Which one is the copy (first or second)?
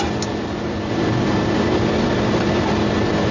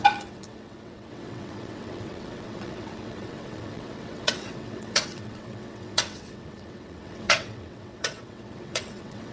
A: second